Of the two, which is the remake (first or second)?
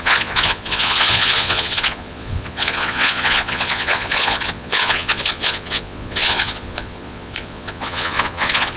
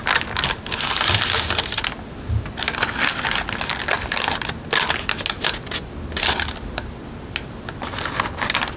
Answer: first